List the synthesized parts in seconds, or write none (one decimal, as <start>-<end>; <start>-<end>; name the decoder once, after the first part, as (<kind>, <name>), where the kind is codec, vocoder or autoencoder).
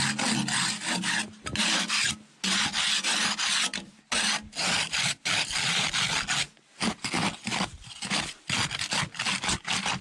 none